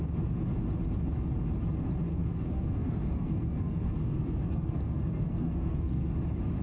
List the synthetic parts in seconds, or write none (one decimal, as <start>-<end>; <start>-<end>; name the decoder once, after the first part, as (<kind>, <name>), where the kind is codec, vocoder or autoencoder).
2.1-6.1 (codec, SNAC)

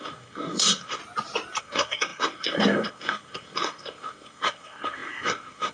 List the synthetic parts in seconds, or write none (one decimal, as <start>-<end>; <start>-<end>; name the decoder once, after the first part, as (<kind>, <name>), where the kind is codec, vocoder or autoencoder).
0.0-1.0 (codec, SNAC); 1.6-5.7

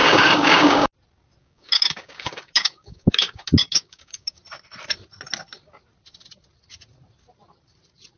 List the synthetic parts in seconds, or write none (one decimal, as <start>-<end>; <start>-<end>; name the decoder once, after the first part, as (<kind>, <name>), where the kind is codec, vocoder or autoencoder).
0.0-0.9 (codec, DAC); 1.4-4.4

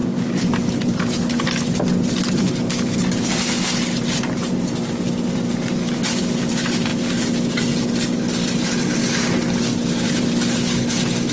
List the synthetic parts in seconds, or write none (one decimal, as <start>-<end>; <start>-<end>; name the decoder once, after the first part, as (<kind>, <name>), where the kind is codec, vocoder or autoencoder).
none

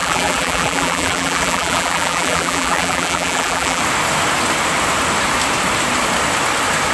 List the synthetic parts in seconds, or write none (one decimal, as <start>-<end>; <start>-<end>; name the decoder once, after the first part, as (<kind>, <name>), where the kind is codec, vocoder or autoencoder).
0.0-3.8 (vocoder, BigVGAN v2)

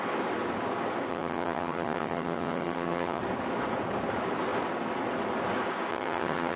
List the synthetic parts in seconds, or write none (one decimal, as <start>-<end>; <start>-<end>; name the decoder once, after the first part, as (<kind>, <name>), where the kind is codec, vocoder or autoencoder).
1.1-3.2 (vocoder, HiFi-GAN); 5.9-6.6